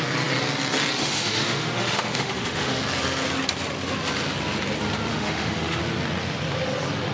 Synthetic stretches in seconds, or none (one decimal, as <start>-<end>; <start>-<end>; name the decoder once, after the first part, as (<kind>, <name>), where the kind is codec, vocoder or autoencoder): 1.0-2.8 (autoencoder, DAC-VAE); 5.1-5.8